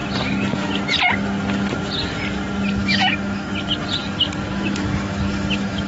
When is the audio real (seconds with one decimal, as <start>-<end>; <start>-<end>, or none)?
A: 0.0-2.8; 3.4-4.5